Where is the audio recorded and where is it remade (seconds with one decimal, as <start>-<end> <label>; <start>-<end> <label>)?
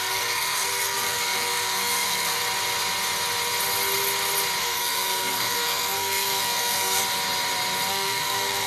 0.0-2.4 remade; 2.4-4.6 recorded; 4.6-7.0 remade; 7.0-7.9 recorded; 7.9-8.7 remade